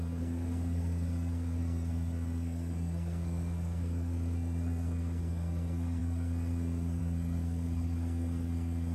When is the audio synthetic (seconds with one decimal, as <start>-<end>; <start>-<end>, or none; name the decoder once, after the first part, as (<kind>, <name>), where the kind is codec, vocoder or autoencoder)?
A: 0.0-8.9 (codec, SNAC)